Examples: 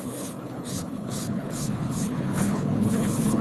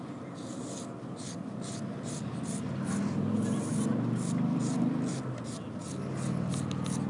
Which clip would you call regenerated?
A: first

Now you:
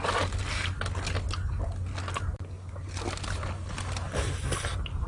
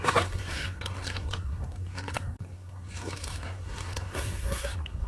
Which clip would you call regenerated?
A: second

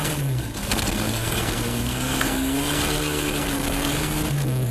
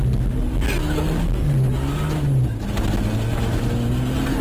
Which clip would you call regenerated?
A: first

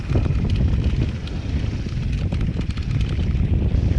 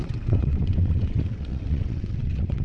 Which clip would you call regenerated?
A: second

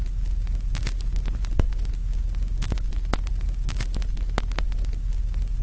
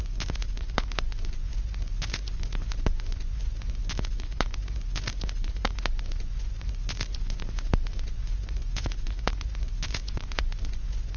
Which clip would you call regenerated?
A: second